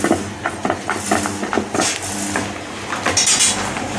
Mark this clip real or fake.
real